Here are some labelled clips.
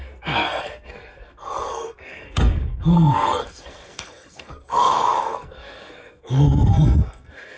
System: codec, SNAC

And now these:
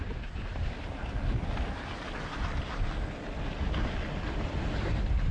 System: none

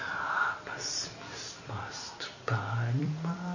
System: vocoder, BigVGAN v2